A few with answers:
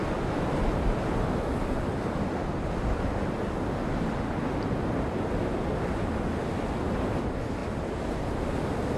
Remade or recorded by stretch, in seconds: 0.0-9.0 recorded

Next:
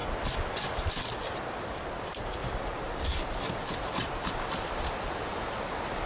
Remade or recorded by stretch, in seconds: 0.0-2.4 recorded; 2.4-4.3 remade; 4.3-6.1 recorded